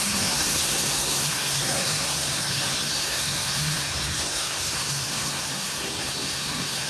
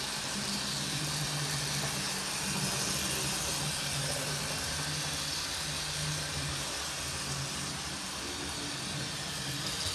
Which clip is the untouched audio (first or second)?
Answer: second